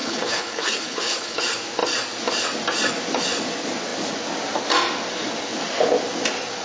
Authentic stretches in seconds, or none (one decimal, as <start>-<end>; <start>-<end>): 1.4-6.6